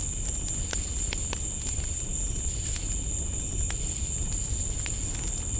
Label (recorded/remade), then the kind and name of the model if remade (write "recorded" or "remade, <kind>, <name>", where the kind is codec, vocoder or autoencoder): recorded